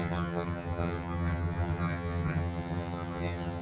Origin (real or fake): fake